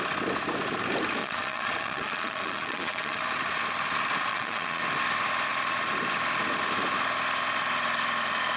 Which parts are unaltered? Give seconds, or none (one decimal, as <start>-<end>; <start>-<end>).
0.0-1.2; 3.2-4.3; 4.8-8.6